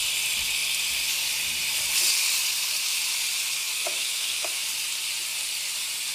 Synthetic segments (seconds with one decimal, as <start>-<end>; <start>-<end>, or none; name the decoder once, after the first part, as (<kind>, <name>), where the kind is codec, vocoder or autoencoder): 3.6-4.6 (autoencoder, DAC-VAE)